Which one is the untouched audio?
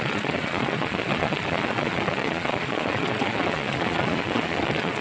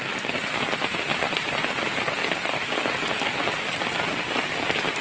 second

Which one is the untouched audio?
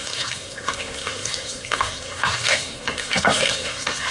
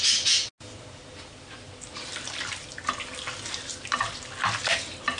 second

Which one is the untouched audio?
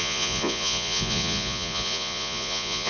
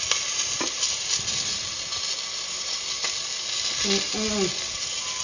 second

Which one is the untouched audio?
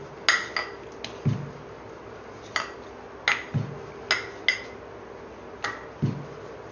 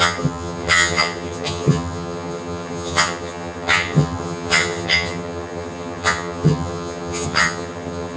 first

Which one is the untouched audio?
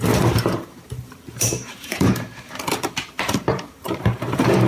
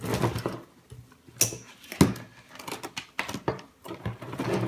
second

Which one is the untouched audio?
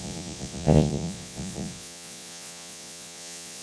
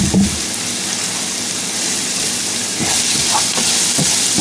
second